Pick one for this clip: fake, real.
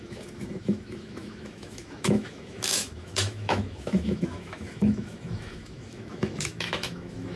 fake